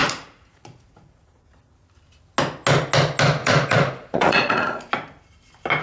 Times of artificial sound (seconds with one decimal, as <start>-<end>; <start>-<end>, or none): 0.0-1.4; 3.4-4.9